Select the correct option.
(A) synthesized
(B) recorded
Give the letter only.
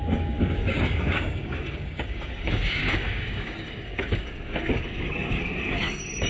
A